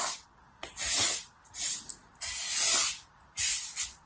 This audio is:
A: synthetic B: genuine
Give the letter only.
B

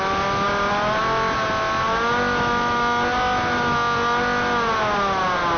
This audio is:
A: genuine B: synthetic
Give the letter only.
A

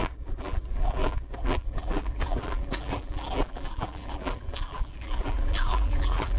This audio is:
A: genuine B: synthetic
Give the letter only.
B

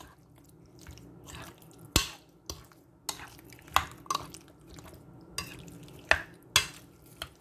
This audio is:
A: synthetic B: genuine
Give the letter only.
B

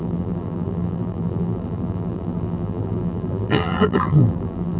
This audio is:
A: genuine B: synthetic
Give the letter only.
B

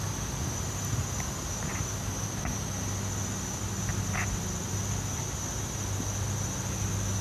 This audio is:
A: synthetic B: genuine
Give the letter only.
B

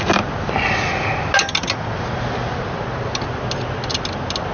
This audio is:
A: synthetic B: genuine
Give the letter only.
B